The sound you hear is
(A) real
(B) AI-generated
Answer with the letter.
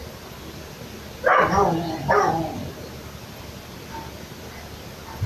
A